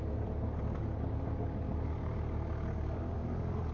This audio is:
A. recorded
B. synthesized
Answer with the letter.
A